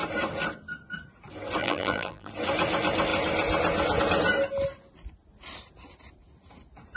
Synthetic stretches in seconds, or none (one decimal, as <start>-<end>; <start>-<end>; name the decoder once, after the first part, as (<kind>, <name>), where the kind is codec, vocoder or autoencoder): 1.6-2.3 (vocoder, BigVGAN v2)